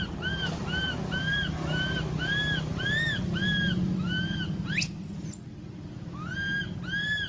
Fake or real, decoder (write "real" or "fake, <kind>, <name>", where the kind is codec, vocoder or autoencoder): real